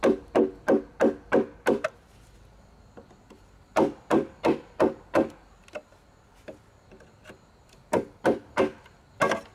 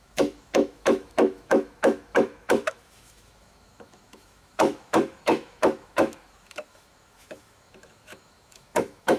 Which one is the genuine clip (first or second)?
first